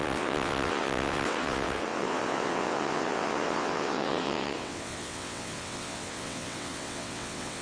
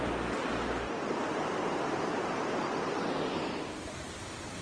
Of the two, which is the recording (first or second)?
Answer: second